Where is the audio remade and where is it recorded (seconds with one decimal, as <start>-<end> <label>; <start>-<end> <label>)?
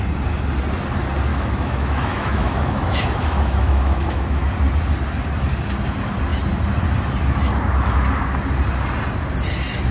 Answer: 0.0-1.3 recorded; 1.3-4.4 remade; 4.4-9.9 recorded